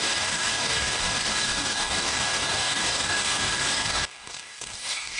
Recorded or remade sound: remade